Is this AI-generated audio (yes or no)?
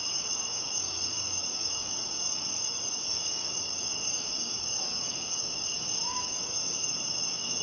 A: yes